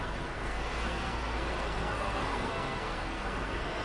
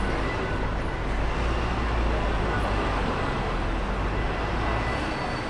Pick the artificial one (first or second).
first